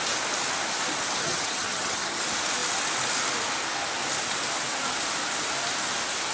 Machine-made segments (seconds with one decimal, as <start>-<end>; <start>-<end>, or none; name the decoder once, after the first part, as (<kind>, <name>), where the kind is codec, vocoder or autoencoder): 1.2-2.2 (vocoder, HiFi-GAN)